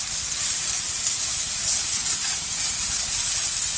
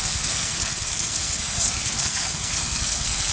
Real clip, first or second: first